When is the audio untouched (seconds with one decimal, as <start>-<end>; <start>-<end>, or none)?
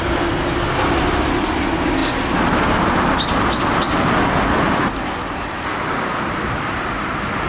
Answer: 0.0-7.5